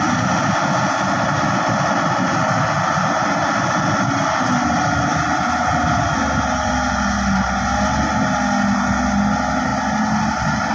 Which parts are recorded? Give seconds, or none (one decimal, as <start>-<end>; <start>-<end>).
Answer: 0.0-10.7